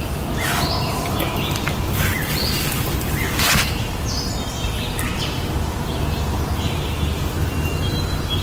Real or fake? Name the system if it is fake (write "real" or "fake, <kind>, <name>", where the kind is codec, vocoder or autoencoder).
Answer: real